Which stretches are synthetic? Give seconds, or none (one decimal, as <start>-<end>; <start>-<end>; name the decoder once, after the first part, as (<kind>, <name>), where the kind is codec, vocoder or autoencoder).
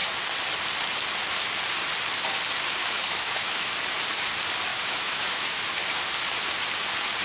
2.8-3.7 (autoencoder, DAC-VAE); 4.7-5.6